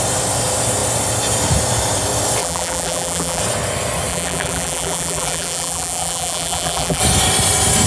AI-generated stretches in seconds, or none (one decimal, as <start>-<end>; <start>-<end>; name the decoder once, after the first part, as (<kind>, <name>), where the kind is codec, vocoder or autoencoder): 2.4-3.4 (vocoder, BigVGAN v2); 4.1-7.0